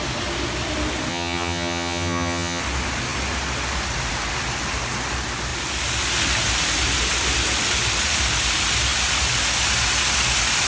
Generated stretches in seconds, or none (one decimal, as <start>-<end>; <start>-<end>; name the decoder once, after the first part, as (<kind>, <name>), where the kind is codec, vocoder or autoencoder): 1.1-2.6 (vocoder, HiFi-GAN)